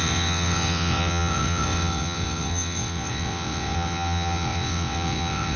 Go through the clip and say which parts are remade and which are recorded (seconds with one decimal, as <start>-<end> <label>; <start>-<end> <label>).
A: 0.0-5.6 remade